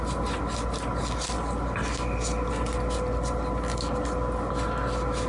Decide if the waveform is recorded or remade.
recorded